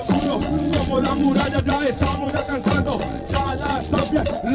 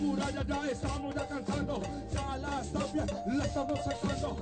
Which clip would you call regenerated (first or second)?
first